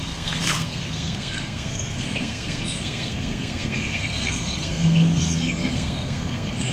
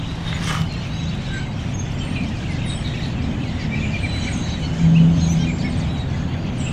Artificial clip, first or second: first